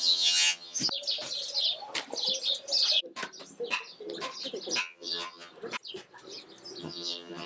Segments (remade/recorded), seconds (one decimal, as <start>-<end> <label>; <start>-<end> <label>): 0.0-0.8 remade; 0.8-4.8 recorded; 4.8-5.5 remade; 5.5-6.8 recorded; 6.8-7.5 remade